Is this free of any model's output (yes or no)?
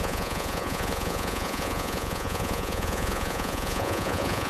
no